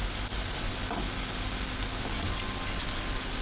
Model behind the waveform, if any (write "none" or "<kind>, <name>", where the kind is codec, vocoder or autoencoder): none